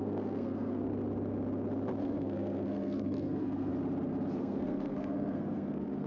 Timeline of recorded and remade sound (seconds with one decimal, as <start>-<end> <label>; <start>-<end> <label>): 0.0-0.9 remade; 0.9-2.0 recorded; 2.0-3.7 remade; 3.7-4.4 recorded; 4.4-6.1 remade